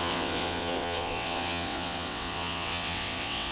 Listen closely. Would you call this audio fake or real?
fake